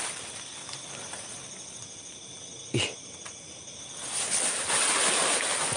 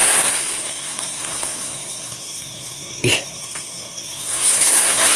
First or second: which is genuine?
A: first